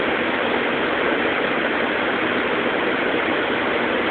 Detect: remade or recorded recorded